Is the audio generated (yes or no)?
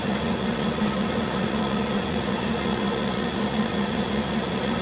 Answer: yes